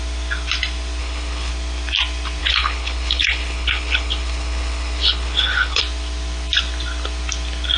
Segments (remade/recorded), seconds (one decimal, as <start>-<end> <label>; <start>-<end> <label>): 0.0-1.0 recorded; 1.0-1.5 remade; 1.5-2.4 recorded; 2.4-5.8 remade; 5.8-7.8 recorded